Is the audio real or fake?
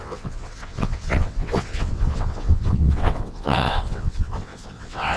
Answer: fake